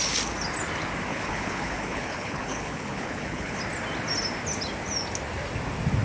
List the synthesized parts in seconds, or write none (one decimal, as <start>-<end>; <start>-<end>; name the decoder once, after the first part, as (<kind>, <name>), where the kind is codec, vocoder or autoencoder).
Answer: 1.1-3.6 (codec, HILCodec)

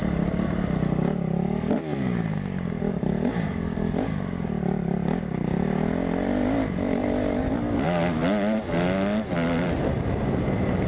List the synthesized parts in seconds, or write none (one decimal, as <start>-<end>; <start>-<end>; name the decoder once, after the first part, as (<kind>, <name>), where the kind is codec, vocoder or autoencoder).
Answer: none

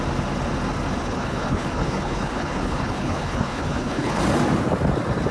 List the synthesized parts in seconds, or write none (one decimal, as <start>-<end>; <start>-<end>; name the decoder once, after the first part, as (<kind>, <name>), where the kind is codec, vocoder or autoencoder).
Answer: 1.0-4.2 (codec, HILCodec)

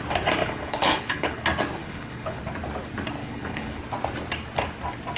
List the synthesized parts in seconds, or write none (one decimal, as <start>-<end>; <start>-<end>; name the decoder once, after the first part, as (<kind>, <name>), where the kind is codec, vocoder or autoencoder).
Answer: 0.4-1.4 (codec, HILCodec); 1.8-2.4; 3.2-3.8

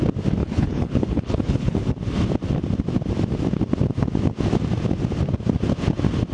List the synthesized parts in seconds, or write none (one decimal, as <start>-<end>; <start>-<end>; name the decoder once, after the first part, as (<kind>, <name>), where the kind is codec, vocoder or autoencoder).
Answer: 0.4-1.8 (codec, HILCodec)

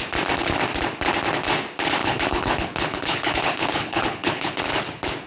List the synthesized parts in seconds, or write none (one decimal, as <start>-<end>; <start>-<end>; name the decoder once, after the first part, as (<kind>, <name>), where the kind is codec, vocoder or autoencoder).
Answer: 2.0-4.6 (codec, HILCodec)

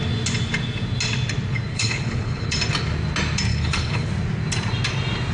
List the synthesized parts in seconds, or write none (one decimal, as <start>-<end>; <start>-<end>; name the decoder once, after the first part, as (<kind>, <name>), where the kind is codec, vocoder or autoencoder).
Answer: 1.7-2.5 (codec, HILCodec); 3.5-4.1

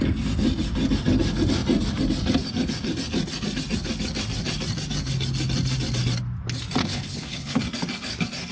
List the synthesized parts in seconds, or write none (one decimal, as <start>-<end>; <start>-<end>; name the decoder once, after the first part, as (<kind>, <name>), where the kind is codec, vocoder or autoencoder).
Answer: 6.8-7.6 (codec, HILCodec)